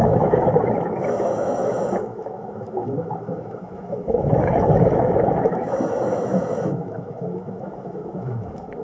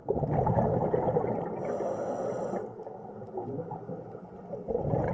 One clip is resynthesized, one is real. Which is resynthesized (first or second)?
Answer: first